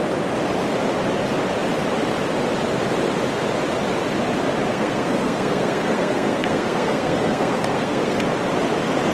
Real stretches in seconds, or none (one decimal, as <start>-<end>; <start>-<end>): 0.0-4.7; 8.2-9.1